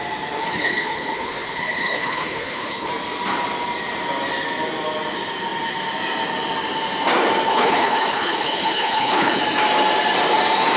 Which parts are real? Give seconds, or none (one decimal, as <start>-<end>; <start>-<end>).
0.0-0.4; 2.9-7.5; 9.4-10.8